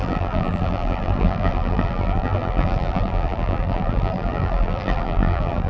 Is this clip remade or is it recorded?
remade